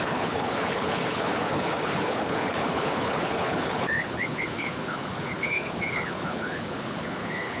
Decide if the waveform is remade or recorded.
remade